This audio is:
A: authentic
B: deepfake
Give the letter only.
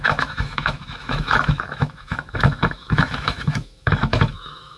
B